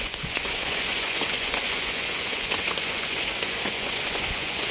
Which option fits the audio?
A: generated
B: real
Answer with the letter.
A